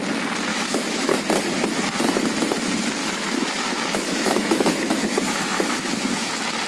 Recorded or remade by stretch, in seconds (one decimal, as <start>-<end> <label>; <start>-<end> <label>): 0.0-0.5 recorded; 0.5-1.1 remade; 1.1-3.0 recorded; 3.0-6.3 remade; 6.3-6.7 recorded